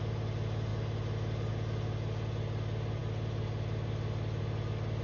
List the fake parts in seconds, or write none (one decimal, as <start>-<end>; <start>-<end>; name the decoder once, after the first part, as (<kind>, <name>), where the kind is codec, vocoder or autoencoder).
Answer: none